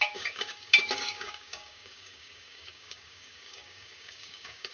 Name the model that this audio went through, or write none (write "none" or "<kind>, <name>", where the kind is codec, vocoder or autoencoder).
codec, DAC